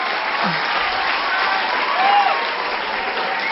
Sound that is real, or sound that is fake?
real